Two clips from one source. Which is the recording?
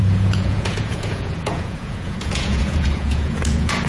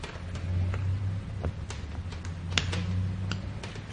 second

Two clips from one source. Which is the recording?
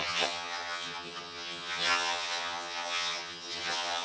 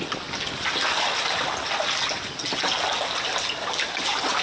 second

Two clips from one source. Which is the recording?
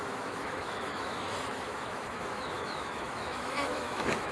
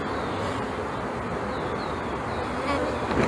second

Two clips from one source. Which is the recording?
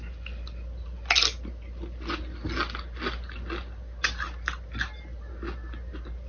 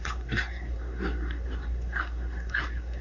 first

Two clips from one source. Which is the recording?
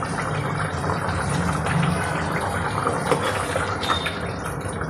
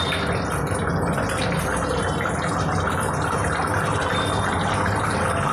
second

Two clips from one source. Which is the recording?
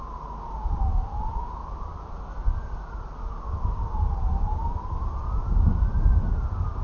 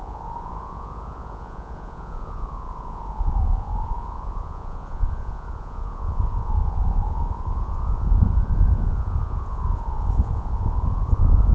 first